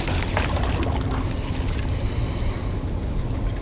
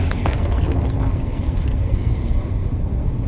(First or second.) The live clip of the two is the first